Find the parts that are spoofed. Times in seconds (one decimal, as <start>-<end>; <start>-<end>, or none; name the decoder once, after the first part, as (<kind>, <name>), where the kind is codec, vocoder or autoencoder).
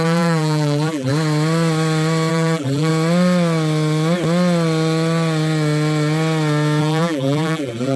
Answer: 0.0-1.1 (vocoder, BigVGAN v2); 2.3-2.9; 6.8-8.0